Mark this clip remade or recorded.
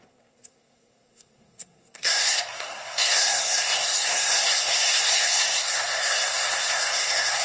remade